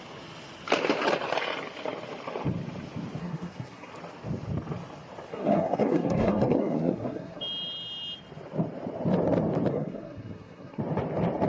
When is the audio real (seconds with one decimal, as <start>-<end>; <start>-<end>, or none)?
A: 0.0-3.2; 3.9-5.3; 7.4-9.7; 10.8-11.5